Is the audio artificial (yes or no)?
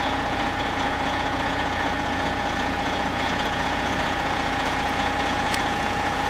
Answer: yes